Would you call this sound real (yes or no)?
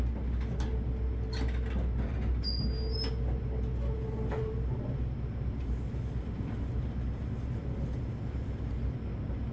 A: yes